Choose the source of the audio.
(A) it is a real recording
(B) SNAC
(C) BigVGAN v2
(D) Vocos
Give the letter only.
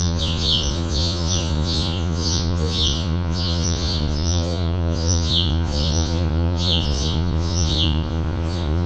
D